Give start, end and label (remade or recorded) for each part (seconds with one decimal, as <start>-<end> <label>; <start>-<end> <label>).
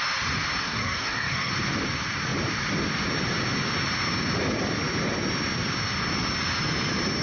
0.0-0.6 recorded; 0.6-1.5 remade; 1.5-7.2 recorded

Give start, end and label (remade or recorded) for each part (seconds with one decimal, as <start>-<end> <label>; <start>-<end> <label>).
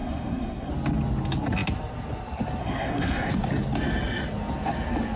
0.0-0.7 remade; 0.7-2.6 recorded; 2.6-3.3 remade; 3.3-5.2 recorded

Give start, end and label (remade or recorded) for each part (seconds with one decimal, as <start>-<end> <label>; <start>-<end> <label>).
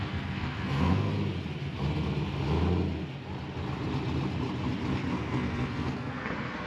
0.0-1.1 remade; 1.1-5.1 recorded; 5.1-6.7 remade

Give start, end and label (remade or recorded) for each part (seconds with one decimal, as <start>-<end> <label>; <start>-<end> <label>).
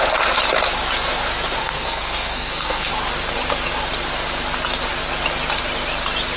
0.0-1.6 recorded; 1.6-2.9 remade; 2.9-6.4 recorded